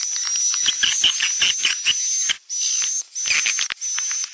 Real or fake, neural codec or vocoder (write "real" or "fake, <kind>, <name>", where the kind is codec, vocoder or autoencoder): real